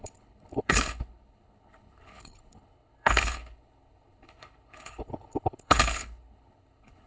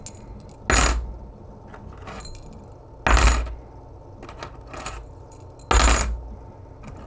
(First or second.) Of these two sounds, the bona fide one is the second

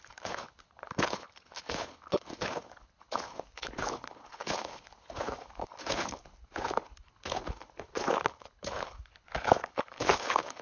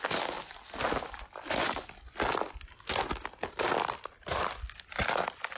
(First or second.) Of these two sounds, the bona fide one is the second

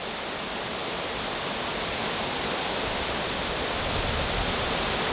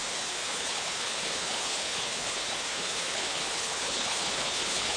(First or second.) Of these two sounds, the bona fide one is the first